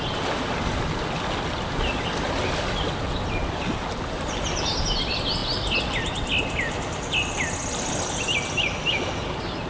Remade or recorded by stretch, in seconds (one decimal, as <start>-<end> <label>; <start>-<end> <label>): 0.0-9.7 recorded